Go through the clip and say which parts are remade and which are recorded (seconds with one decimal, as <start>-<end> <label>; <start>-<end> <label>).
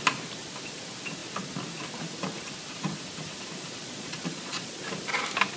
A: 0.0-3.8 recorded; 3.8-4.8 remade; 4.8-5.6 recorded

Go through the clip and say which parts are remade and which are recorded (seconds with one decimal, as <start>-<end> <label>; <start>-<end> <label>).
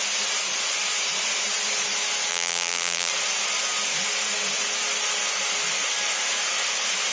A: 0.0-2.3 recorded; 2.3-3.1 remade; 3.1-7.1 recorded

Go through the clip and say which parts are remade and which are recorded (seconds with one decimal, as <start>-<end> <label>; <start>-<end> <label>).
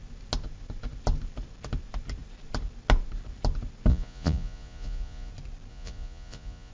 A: 0.0-3.9 recorded; 3.9-5.3 remade; 5.3-5.7 recorded; 5.7-6.7 remade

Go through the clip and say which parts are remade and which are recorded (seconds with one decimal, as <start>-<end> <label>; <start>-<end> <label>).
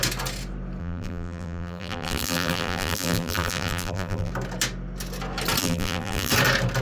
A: 0.0-0.8 recorded; 0.8-4.3 remade; 4.3-5.6 recorded; 5.6-6.3 remade; 6.3-6.8 recorded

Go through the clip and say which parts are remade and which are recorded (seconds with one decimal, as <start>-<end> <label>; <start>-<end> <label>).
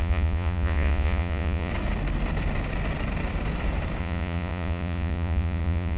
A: 0.0-1.7 remade; 1.7-4.0 recorded; 4.0-6.0 remade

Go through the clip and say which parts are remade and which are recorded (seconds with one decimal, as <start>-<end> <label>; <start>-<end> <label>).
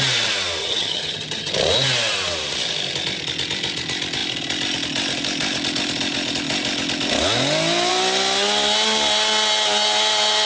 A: 0.0-0.6 recorded; 0.6-1.5 remade; 1.5-10.5 recorded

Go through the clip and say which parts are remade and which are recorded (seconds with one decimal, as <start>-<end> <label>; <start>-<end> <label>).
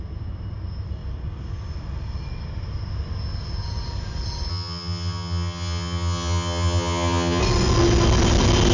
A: 0.0-4.5 recorded; 4.5-7.4 remade; 7.4-8.7 recorded